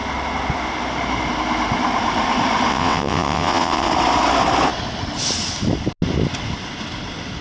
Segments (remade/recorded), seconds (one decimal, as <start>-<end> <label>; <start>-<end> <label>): 0.0-2.7 recorded; 2.7-3.9 remade; 3.9-7.4 recorded